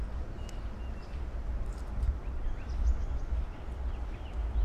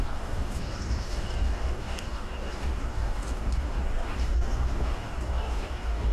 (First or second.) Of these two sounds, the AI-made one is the second